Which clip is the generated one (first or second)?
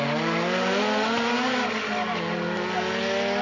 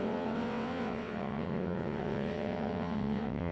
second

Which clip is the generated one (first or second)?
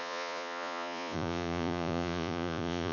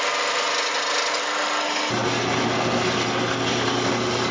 first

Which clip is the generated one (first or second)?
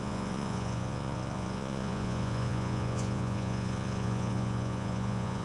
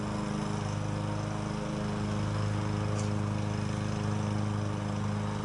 first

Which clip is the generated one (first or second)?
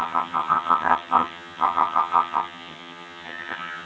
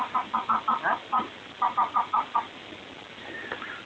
first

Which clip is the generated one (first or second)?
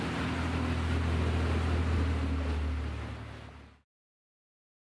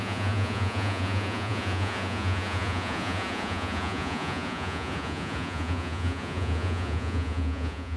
second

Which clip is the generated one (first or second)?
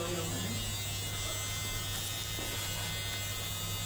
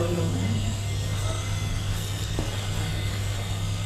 second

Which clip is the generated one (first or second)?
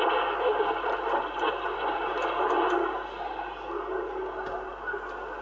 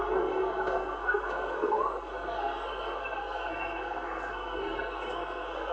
second